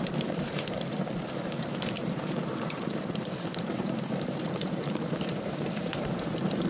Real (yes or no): no